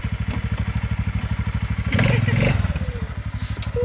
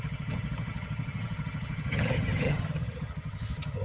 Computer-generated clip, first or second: second